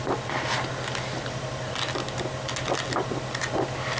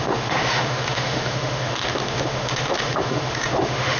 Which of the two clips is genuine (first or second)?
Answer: first